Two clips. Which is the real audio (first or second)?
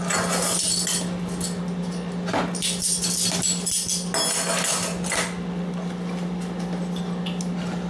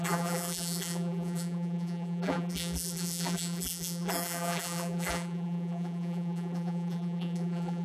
first